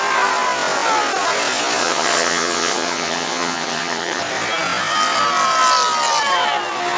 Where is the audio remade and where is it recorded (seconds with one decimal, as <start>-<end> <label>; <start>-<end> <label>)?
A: 0.0-1.8 recorded; 1.8-4.2 remade; 4.2-7.0 recorded